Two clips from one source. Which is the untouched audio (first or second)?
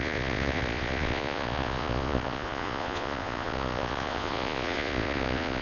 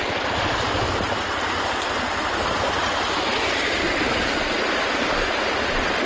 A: second